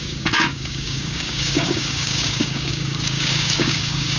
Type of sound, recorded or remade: remade